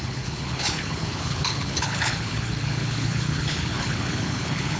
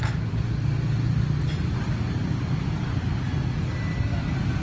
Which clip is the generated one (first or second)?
first